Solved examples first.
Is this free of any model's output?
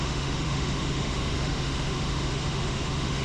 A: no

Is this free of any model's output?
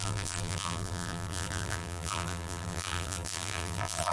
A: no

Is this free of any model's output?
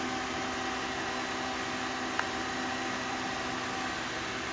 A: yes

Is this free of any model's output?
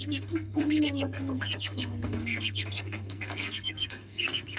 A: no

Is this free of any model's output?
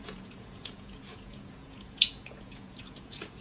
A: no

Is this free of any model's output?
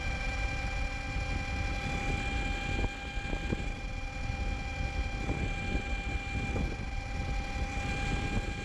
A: yes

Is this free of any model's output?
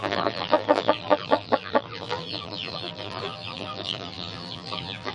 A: no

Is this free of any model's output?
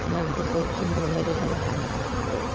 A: no